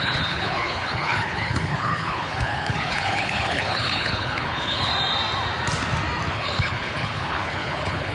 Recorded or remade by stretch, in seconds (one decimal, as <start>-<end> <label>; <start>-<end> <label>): 0.0-4.9 remade; 4.9-6.3 recorded; 6.3-8.1 remade